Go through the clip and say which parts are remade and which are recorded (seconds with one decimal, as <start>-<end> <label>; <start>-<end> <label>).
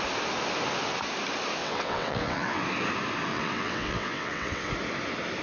0.0-1.6 recorded; 1.6-2.6 remade; 2.6-3.3 recorded; 3.3-4.7 remade; 4.7-5.4 recorded